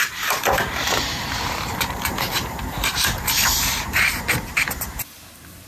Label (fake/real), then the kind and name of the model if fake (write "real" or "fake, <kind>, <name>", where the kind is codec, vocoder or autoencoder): fake, vocoder, BigVGAN v2